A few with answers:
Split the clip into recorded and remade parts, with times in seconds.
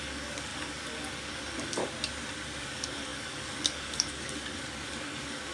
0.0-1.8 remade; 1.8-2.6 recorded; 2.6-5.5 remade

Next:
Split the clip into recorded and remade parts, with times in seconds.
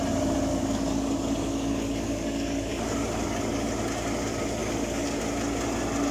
0.0-0.5 recorded; 0.5-3.7 remade; 3.7-4.6 recorded; 4.6-5.2 remade; 5.2-6.1 recorded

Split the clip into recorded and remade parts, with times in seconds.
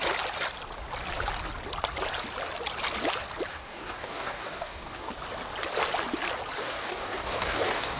0.0-3.5 recorded; 3.5-5.1 remade; 5.1-6.6 recorded; 6.6-8.0 remade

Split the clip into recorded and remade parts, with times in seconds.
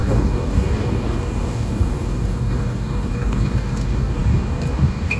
0.0-5.2 remade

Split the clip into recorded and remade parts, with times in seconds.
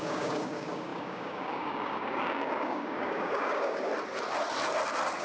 0.0-3.9 remade; 3.9-5.2 recorded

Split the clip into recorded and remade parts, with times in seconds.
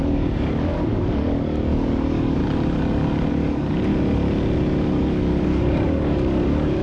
0.0-2.4 remade; 2.4-3.3 recorded; 3.3-3.9 remade; 3.9-5.0 recorded; 5.0-6.8 remade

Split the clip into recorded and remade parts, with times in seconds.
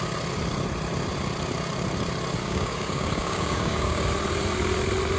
0.0-2.4 recorded; 2.4-4.1 remade; 4.1-5.2 recorded